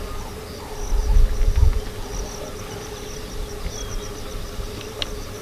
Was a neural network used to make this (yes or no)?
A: no